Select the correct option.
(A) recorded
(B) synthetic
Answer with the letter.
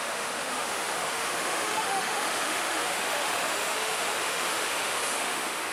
B